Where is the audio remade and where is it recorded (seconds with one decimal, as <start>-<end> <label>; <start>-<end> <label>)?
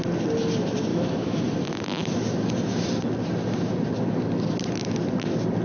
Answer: 0.0-0.9 recorded; 0.9-1.4 remade; 1.4-5.6 recorded